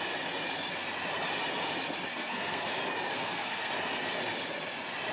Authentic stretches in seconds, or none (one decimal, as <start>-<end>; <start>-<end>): 0.0-2.1; 2.7-3.1; 3.7-5.1